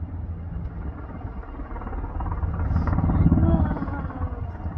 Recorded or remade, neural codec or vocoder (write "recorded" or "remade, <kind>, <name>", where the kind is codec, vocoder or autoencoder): recorded